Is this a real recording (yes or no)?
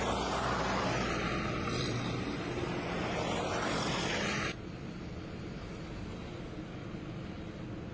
yes